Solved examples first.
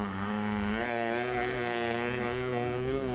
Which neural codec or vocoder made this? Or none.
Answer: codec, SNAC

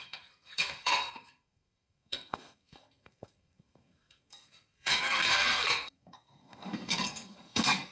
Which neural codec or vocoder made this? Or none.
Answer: codec, SNAC